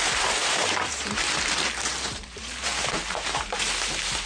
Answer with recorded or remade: remade